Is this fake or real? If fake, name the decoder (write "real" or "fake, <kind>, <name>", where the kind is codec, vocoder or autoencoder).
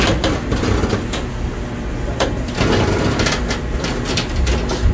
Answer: real